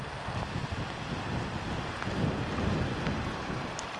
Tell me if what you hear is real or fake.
real